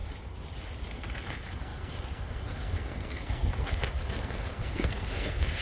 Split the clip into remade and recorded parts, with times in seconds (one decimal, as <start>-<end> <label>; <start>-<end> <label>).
0.0-0.9 recorded; 0.9-5.6 remade